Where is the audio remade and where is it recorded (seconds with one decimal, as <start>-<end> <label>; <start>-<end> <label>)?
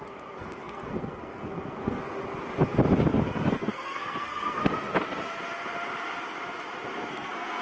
0.0-2.1 remade; 2.1-3.5 recorded; 3.5-4.6 remade; 4.6-7.1 recorded; 7.1-7.6 remade